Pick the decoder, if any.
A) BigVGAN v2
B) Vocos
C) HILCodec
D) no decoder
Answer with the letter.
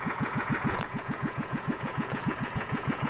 B